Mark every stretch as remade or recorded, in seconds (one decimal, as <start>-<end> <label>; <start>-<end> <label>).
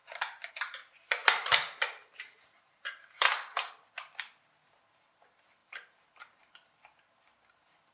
0.0-0.5 remade; 0.5-1.2 recorded; 1.2-3.7 remade; 3.7-5.6 recorded; 5.6-6.4 remade; 6.4-7.9 recorded